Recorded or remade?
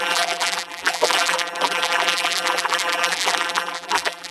remade